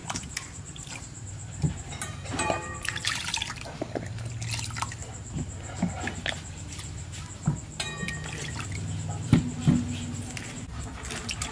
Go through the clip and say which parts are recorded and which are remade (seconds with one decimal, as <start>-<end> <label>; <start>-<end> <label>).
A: 0.0-4.3 remade; 4.3-11.5 recorded